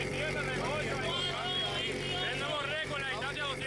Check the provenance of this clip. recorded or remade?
recorded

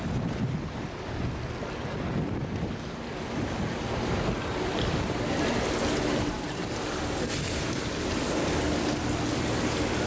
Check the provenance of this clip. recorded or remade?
recorded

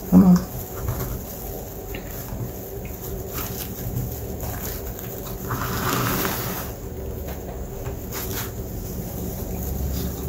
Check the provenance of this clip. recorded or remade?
recorded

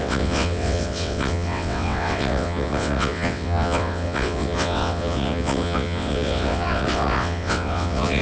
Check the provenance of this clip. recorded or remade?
remade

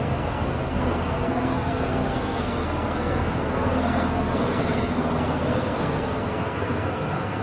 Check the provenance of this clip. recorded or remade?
remade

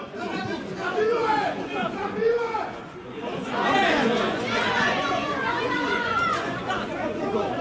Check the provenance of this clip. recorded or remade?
remade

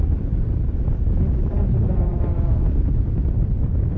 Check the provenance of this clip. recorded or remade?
recorded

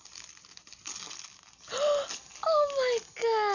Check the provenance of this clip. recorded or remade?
recorded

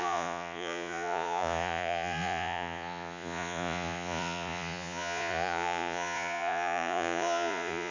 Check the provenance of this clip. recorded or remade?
remade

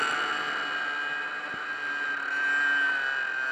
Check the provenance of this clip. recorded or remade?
recorded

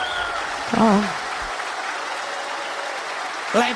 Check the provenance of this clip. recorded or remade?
remade